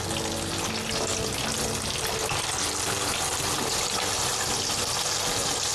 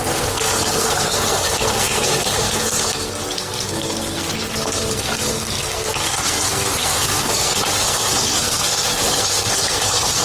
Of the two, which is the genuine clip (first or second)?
first